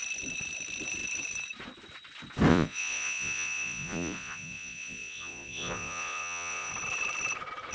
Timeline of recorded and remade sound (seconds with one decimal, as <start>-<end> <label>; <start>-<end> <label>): 0.0-2.5 recorded; 2.5-6.7 remade; 6.7-7.7 recorded